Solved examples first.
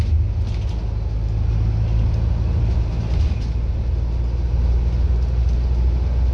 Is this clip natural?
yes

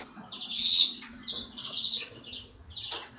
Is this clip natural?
no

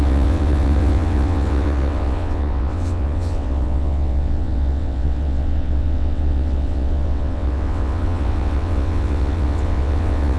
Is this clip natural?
no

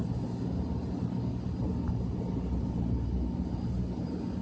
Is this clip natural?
yes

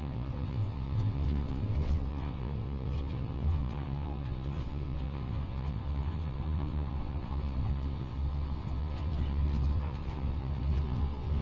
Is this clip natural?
no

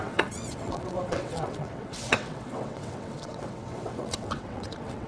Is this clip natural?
no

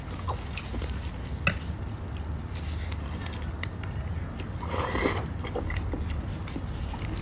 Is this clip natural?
yes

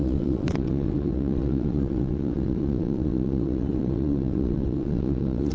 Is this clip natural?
no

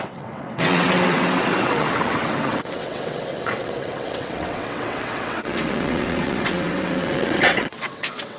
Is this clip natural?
no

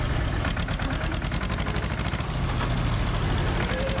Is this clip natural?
yes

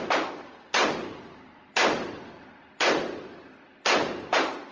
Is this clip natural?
yes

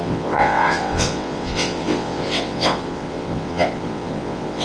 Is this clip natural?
no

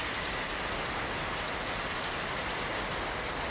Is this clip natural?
yes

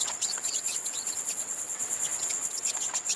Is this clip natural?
no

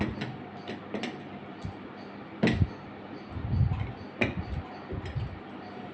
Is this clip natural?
yes